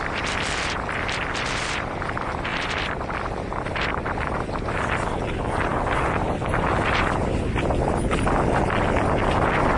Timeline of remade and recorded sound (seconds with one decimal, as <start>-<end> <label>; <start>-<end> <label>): 0.0-9.8 recorded